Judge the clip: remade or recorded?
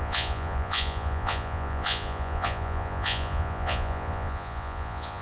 remade